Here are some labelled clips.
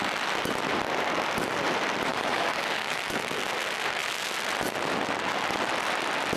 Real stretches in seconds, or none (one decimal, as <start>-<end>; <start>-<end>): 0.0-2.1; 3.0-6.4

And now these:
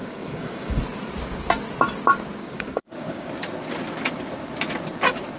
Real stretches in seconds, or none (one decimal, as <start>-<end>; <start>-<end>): 0.8-2.4; 3.3-5.4

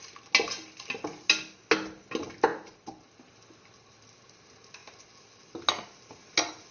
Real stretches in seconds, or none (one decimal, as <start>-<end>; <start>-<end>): 0.0-6.7

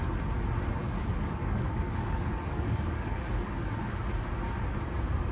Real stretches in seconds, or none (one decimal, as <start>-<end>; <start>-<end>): 0.0-0.8; 4.0-5.3

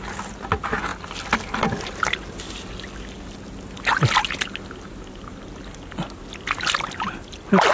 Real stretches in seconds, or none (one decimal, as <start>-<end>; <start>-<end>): 0.0-7.7